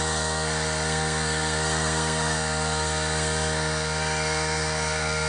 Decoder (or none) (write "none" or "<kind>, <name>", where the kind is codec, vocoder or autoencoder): codec, SNAC